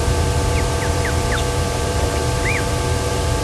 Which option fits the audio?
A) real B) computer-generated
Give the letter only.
B